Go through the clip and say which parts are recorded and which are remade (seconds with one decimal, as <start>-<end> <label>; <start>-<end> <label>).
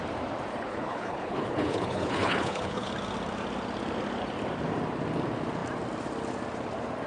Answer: 0.0-0.5 recorded; 0.5-2.9 remade; 2.9-7.1 recorded